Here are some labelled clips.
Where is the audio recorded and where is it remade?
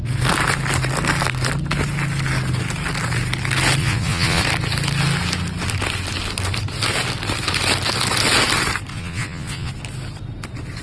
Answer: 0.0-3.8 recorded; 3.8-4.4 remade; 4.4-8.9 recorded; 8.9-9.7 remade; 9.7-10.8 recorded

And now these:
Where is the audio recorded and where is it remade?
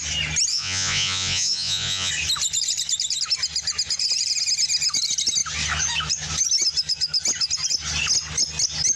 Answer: 0.0-0.5 recorded; 0.5-2.1 remade; 2.1-9.0 recorded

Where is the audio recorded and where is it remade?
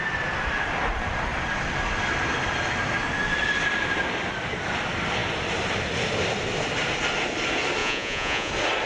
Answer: 0.0-7.8 recorded; 7.8-8.5 remade; 8.5-8.9 recorded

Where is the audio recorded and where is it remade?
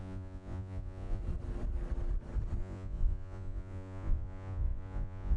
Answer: 0.0-1.2 remade; 1.2-2.6 recorded; 2.6-5.4 remade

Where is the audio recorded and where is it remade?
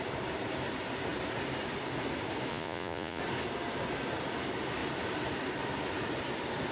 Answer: 0.0-2.5 recorded; 2.5-3.2 remade; 3.2-6.7 recorded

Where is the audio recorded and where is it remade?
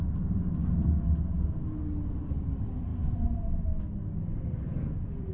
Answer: 0.0-4.7 recorded; 4.7-5.3 remade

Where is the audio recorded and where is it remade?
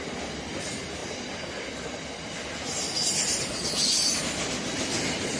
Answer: 0.0-5.4 recorded